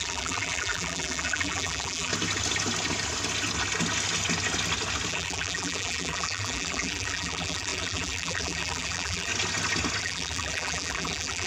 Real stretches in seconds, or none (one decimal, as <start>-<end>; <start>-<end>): 2.1-5.1; 9.3-10.0